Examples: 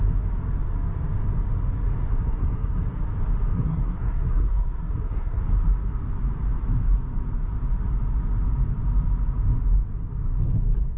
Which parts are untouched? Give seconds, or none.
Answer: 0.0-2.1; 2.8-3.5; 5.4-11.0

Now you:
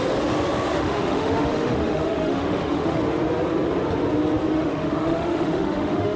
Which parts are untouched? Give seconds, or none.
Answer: 0.0-0.7; 3.0-4.5

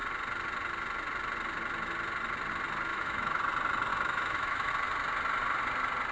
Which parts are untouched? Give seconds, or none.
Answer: 0.0-2.9; 3.4-3.9; 4.7-6.1

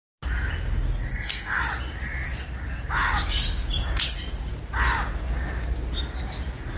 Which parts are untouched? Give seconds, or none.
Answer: 0.0-1.1; 1.6-6.8

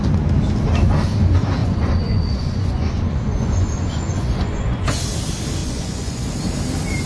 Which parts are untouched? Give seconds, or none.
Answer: 0.0-1.6; 5.0-5.6; 6.3-7.1

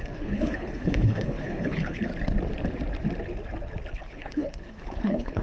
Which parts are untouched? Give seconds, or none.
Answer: 2.1-3.9